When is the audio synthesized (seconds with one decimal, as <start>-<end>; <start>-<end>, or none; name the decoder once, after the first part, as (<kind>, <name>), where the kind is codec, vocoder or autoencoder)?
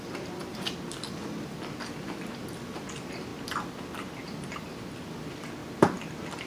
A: 0.4-0.9 (vocoder, BigVGAN v2); 3.3-4.5; 5.6-6.1